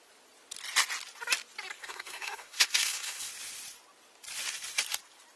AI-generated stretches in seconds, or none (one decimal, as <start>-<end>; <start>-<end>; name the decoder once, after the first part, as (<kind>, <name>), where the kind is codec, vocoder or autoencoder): 1.8-3.3 (codec, SNAC)